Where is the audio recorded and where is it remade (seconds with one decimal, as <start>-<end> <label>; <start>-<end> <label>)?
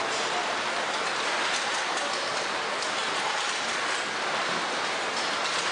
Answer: 0.0-0.4 recorded; 0.4-2.5 remade; 2.5-3.0 recorded; 3.0-4.4 remade; 4.4-5.7 recorded